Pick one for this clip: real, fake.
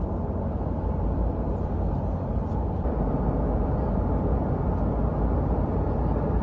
real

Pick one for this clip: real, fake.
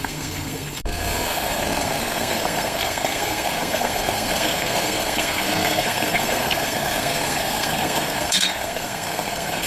fake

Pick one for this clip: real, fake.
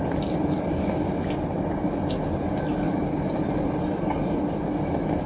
real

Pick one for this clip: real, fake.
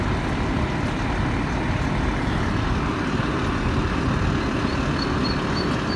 real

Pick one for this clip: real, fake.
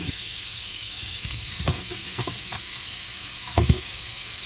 fake